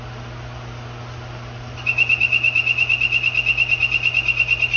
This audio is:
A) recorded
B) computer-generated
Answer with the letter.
A